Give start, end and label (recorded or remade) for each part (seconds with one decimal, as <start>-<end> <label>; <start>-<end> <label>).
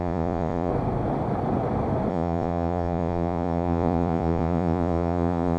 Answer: 0.0-0.7 remade; 0.7-2.1 recorded; 2.1-5.6 remade